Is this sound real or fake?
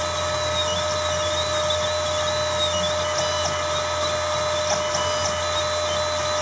real